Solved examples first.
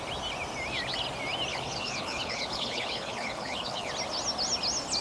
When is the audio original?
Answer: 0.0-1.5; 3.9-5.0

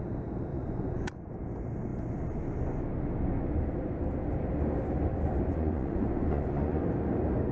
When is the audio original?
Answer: 0.0-0.5; 1.3-5.5; 6.8-7.5